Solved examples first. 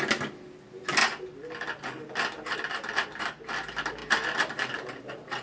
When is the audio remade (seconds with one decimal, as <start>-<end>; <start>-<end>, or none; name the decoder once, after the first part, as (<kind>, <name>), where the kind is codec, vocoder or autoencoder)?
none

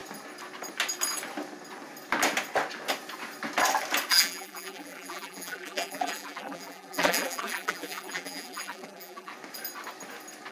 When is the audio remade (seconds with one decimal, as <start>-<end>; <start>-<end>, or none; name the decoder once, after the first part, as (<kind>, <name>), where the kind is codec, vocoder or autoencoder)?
4.1-9.3 (vocoder, BigVGAN v2)

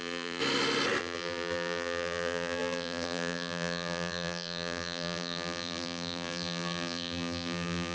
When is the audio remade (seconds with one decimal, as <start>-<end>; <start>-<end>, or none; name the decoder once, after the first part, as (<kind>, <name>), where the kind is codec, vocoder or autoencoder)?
0.0-0.4 (vocoder, BigVGAN v2); 1.0-7.9

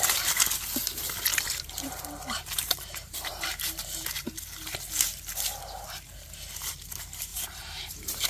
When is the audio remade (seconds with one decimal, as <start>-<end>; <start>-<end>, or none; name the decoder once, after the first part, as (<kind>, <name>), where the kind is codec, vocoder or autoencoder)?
1.3-3.5 (vocoder, BigVGAN v2); 7.3-8.3